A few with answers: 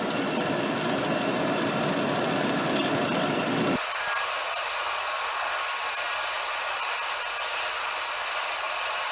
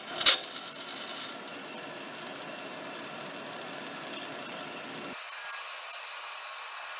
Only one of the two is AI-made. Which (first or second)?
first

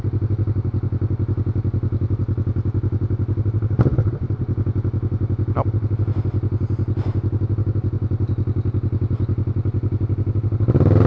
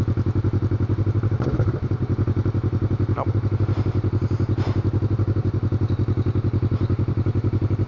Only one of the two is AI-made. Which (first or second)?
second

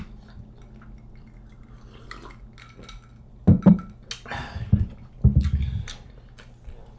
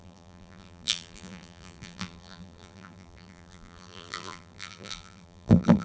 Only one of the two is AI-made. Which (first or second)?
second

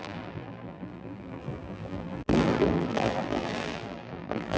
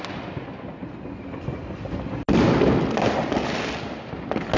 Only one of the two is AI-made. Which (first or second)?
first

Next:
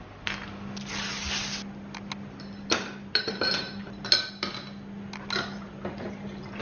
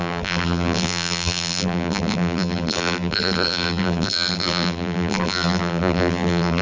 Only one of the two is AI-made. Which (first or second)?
second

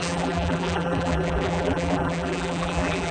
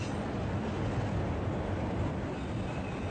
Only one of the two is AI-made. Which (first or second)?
first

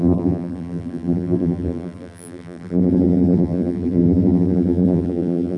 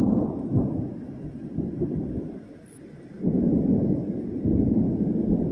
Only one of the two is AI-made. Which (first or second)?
first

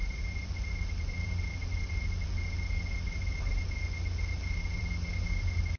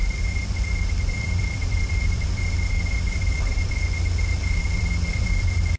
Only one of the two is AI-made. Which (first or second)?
second